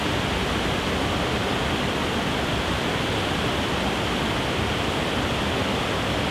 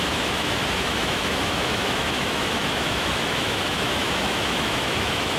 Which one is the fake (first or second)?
second